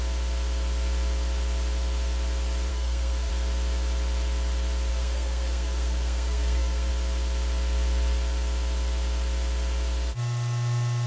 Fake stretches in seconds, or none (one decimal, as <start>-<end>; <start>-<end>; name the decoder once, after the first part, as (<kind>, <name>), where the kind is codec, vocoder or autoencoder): 2.7-3.3 (codec, SNAC); 4.9-6.9